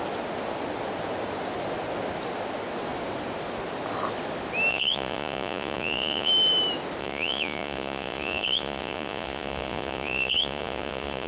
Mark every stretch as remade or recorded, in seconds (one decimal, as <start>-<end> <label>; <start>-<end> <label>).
0.0-4.7 recorded; 4.7-6.3 remade; 6.3-7.0 recorded; 7.0-11.3 remade